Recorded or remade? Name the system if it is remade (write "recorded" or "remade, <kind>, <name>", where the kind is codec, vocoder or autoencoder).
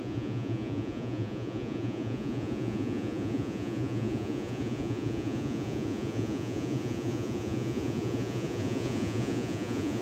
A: remade, vocoder, Vocos